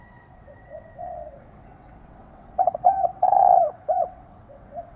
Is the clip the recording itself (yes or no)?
no